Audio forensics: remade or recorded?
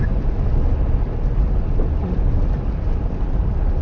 recorded